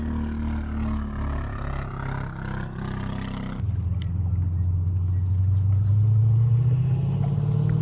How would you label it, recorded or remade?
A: recorded